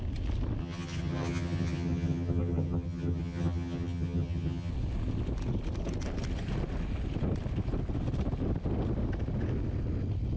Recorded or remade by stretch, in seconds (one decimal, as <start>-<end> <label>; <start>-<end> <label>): 0.0-0.6 recorded; 0.6-4.7 remade; 4.7-10.4 recorded